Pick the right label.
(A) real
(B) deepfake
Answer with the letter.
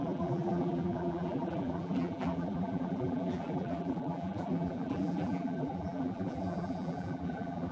B